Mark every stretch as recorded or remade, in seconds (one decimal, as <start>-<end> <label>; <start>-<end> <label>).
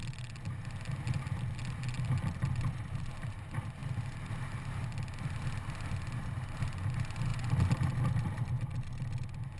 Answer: 0.0-9.6 recorded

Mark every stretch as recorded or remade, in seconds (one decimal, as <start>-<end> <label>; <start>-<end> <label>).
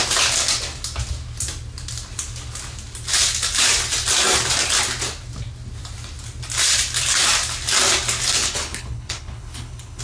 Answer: 0.0-8.4 recorded; 8.4-10.0 remade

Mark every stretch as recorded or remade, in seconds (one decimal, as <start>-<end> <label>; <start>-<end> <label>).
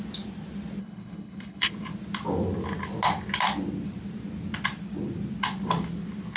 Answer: 0.0-0.8 recorded; 0.8-1.7 remade; 1.7-6.4 recorded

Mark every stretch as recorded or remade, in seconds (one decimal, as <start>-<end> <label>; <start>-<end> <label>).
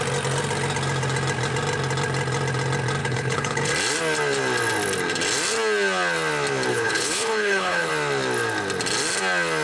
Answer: 0.0-3.0 recorded; 3.0-3.7 remade; 3.7-6.7 recorded; 6.7-7.9 remade; 7.9-9.6 recorded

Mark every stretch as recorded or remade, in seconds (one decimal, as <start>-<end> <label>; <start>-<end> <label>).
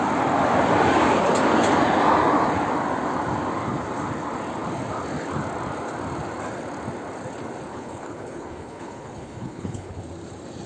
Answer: 0.0-7.7 recorded; 7.7-10.0 remade; 10.0-10.7 recorded